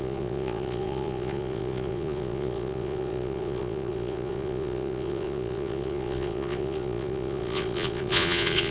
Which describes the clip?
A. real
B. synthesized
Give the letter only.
B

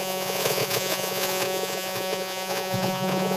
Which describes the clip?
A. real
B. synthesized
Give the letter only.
B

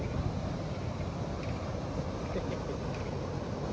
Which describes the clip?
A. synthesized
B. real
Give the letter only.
B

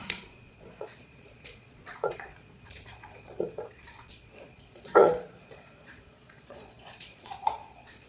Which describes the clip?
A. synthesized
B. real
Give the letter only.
A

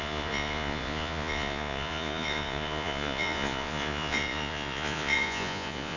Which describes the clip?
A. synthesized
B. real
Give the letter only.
A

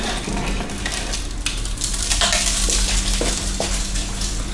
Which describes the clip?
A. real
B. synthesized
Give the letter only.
A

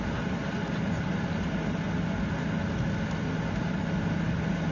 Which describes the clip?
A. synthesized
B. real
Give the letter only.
B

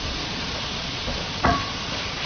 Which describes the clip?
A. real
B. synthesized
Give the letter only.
B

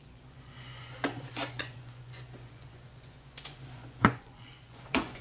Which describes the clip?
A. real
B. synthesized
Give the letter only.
B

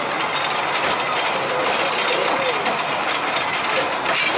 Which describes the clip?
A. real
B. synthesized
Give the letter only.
A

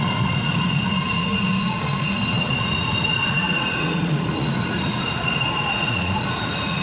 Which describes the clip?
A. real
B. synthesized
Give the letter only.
B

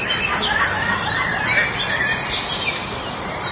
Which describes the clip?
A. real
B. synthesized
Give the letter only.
A